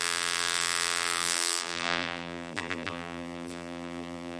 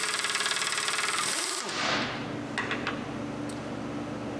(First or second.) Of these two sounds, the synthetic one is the first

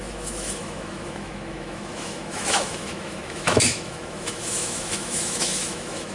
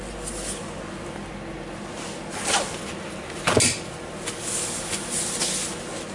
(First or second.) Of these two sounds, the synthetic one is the first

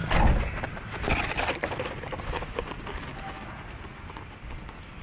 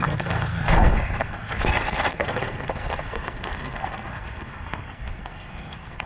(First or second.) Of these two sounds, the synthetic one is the second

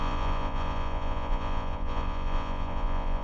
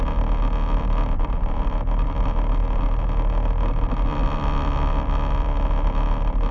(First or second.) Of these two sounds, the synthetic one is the first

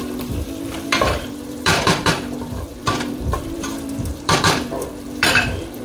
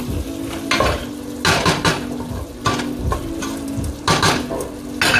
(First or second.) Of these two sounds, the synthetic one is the first